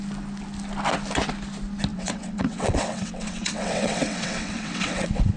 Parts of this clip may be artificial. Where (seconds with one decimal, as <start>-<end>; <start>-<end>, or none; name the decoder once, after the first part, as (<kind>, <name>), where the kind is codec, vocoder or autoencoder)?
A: 1.9-5.4 (vocoder, WaveNeXt)